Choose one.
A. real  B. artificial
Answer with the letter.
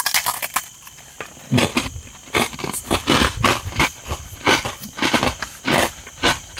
A